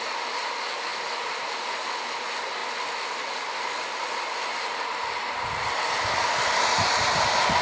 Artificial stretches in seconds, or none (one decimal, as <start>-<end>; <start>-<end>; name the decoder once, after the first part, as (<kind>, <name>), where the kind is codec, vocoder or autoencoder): none